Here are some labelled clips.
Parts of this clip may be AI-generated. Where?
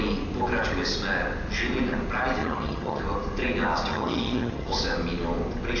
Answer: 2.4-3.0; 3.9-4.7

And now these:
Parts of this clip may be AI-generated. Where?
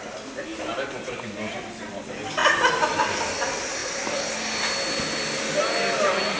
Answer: none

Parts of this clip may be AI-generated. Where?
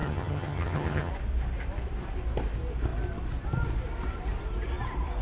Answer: 0.0-1.1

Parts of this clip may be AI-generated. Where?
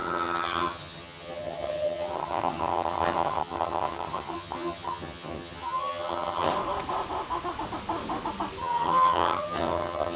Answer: 0.0-6.5; 8.6-10.2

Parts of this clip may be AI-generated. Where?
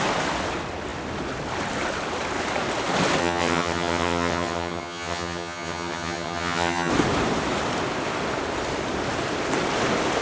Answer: 3.2-6.9